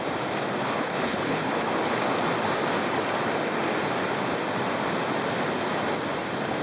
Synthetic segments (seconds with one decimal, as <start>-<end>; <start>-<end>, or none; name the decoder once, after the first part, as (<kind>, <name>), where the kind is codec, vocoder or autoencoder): 0.6-1.7 (codec, HILCodec)